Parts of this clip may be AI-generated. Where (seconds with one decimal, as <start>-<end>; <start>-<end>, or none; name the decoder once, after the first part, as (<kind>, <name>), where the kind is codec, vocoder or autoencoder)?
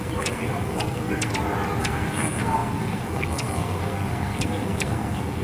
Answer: 0.0-1.3 (codec, SNAC); 1.8-5.4